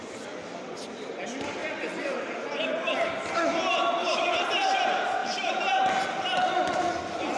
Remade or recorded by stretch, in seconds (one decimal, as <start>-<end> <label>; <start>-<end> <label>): 0.0-1.6 recorded; 1.6-3.1 remade; 3.1-5.2 recorded; 5.2-5.9 remade; 5.9-7.4 recorded